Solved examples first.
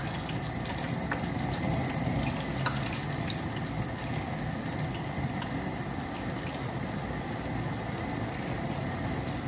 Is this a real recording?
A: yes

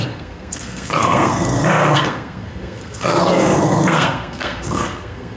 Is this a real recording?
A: no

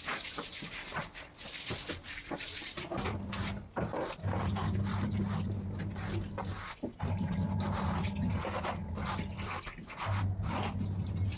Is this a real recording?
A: yes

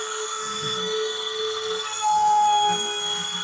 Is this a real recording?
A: no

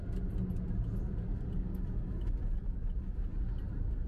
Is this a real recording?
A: yes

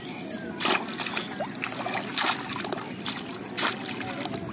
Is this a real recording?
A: yes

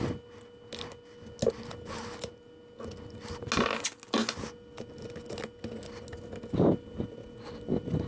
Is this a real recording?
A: yes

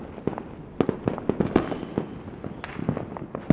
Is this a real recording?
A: yes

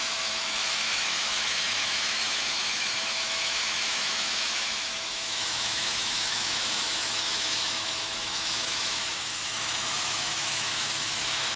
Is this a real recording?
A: no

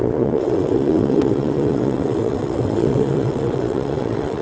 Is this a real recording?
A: no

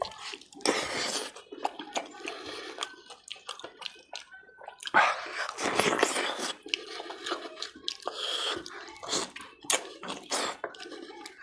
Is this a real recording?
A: yes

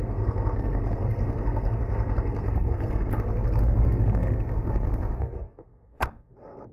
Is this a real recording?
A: no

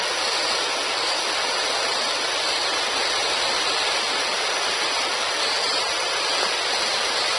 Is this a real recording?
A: yes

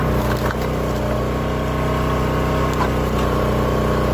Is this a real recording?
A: yes